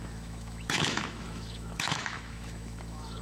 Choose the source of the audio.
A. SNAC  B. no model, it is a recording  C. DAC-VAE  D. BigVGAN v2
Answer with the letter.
C